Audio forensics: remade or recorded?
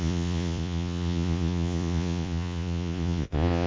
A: remade